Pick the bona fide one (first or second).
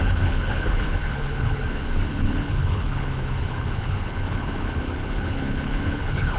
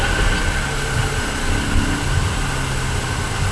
second